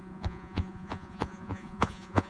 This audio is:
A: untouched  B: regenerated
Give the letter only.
B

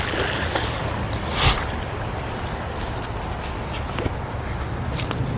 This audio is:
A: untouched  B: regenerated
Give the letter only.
A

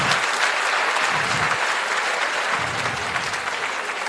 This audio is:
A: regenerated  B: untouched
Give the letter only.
B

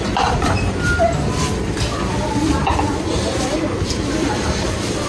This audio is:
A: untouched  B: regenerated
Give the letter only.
B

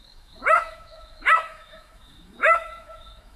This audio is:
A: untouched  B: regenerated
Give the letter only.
B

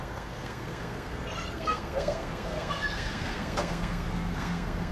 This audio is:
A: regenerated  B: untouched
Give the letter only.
A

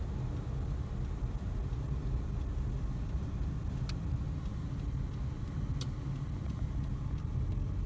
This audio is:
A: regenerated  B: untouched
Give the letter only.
B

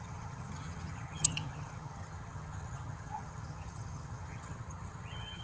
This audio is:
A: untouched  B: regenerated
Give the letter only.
B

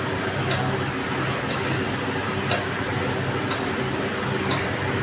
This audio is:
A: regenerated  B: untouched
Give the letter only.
B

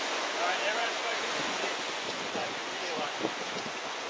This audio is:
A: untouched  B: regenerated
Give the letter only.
B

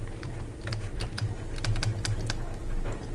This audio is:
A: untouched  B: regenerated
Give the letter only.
A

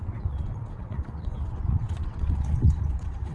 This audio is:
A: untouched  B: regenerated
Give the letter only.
B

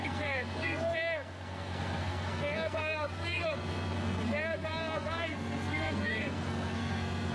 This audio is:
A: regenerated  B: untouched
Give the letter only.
A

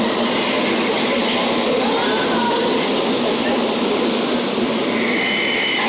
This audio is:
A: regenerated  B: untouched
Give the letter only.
B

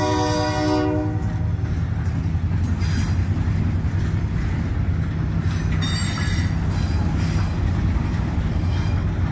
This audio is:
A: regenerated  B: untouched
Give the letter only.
B